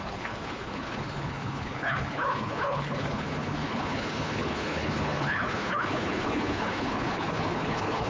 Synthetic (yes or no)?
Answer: yes